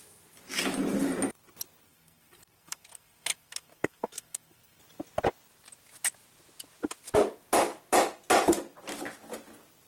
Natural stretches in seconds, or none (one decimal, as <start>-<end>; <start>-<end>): 0.0-1.8; 4.8-9.9